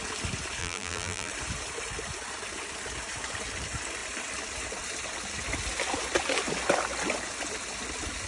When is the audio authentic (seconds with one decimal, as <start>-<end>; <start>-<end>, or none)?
0.0-0.6; 1.3-8.3